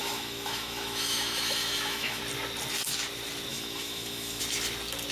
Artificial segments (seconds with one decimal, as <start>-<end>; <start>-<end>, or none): 0.0-2.2; 3.5-4.4